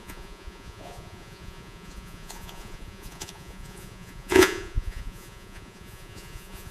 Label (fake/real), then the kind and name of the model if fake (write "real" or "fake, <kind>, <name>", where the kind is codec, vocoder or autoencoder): fake, vocoder, Vocos